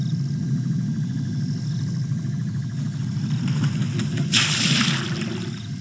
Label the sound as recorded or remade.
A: recorded